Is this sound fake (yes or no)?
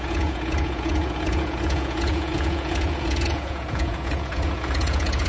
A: yes